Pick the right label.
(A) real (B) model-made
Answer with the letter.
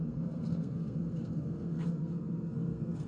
B